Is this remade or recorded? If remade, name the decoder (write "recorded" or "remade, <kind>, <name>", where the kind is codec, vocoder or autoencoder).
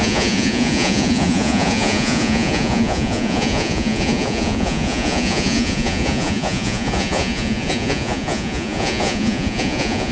remade, vocoder, Vocos